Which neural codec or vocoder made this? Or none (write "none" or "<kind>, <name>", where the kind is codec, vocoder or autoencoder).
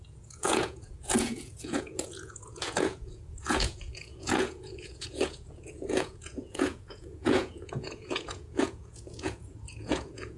vocoder, Vocos